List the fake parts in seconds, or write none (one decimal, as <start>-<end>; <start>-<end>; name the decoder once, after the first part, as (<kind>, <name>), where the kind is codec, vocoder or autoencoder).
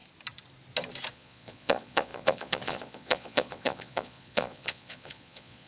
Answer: 1.1-5.7 (vocoder, Vocos)